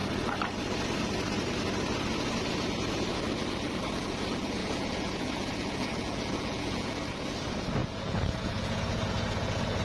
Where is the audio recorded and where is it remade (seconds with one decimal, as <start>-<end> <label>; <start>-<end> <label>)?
0.0-4.6 recorded; 4.6-6.9 remade; 6.9-7.8 recorded; 7.8-9.8 remade